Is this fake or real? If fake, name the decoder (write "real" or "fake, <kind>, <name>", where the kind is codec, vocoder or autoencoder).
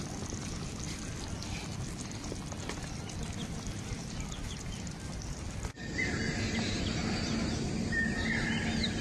real